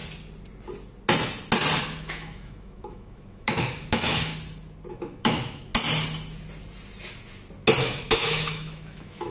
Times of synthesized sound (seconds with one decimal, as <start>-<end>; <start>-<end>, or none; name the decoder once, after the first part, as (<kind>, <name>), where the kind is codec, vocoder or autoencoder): 1.8-4.3 (autoencoder, DAC-VAE); 4.9-5.7; 7.8-9.3